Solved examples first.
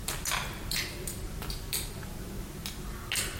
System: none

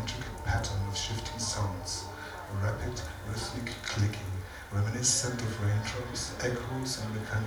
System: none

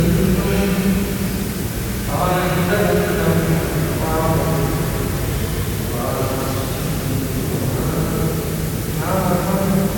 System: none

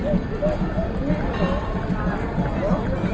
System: vocoder, BigVGAN v2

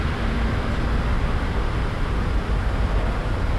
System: vocoder, BigVGAN v2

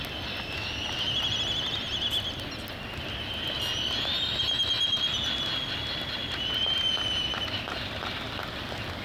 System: none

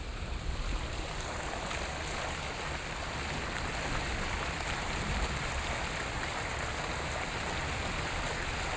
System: none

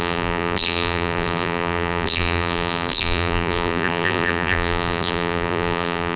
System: vocoder, BigVGAN v2